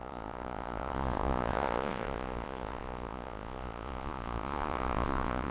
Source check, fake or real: fake